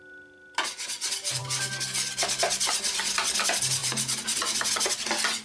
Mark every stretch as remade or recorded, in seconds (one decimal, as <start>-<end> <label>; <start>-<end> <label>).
0.0-3.8 recorded; 3.8-4.7 remade; 4.7-5.4 recorded